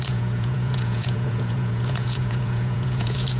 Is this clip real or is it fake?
fake